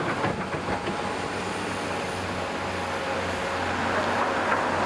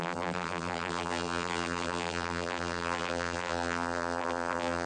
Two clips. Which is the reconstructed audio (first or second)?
second